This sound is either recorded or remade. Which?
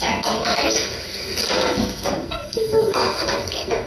remade